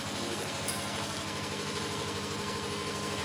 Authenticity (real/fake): fake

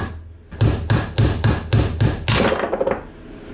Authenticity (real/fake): real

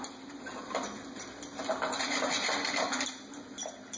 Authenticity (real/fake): real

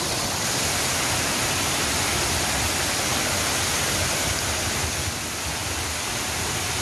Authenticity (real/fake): real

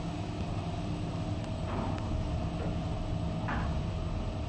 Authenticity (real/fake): real